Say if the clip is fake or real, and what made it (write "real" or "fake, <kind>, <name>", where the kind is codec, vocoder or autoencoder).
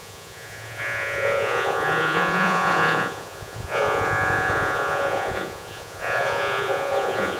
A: fake, vocoder, Vocos